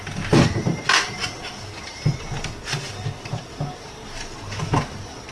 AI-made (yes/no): no